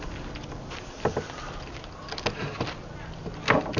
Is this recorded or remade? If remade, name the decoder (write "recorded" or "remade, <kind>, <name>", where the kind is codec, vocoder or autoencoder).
recorded